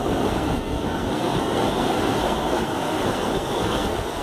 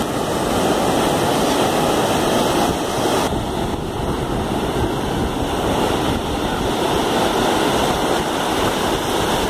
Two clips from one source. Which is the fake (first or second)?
first